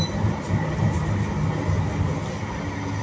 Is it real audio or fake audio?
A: real